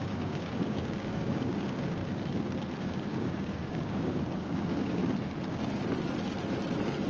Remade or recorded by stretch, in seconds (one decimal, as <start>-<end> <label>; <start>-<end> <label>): 0.0-2.0 remade; 2.0-2.8 recorded; 2.8-5.0 remade; 5.0-7.1 recorded